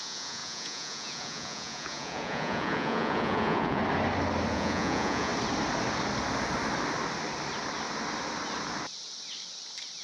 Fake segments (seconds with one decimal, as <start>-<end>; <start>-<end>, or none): 0.0-3.8; 4.5-5.3